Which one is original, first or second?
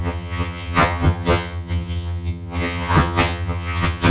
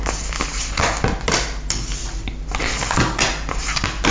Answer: second